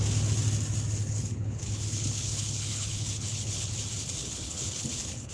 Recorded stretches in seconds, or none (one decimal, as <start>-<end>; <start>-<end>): 0.0-1.0; 3.8-4.2